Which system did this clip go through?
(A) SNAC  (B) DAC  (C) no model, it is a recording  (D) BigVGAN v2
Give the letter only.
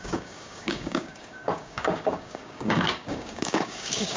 B